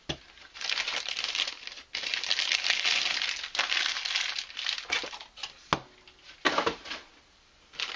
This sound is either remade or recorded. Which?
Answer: recorded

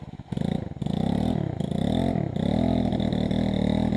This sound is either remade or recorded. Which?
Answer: recorded